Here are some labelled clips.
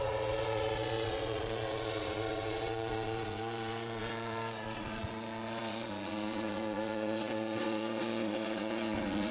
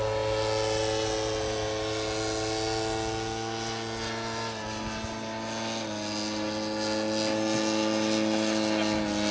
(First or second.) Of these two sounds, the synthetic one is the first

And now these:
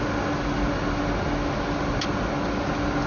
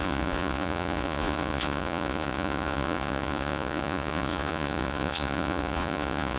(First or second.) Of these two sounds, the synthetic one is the second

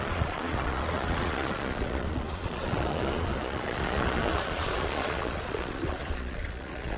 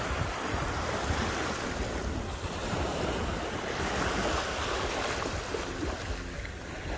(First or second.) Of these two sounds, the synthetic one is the first